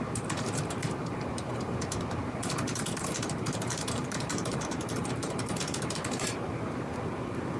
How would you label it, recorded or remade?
remade